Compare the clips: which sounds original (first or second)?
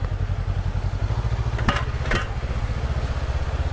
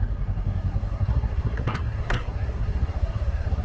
first